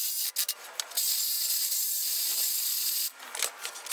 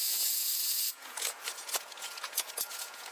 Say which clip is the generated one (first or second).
second